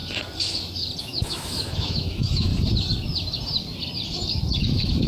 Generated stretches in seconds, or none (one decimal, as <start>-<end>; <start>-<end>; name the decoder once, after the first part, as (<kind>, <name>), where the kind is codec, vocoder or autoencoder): 1.0-2.5 (autoencoder, DAC-VAE); 4.6-5.1